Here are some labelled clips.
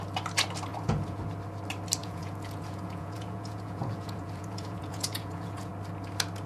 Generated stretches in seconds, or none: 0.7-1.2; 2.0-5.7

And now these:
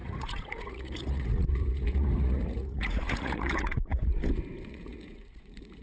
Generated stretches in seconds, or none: 0.0-4.1; 4.7-5.8

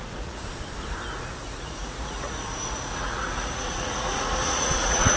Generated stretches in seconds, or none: 0.0-0.4; 1.1-5.2

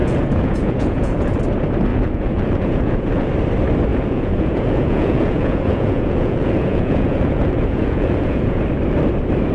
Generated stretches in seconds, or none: 0.0-1.4; 1.9-3.3; 3.9-8.6

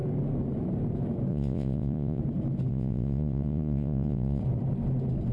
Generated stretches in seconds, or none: 1.3-2.2; 2.7-4.4